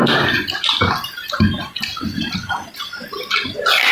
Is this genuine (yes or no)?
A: yes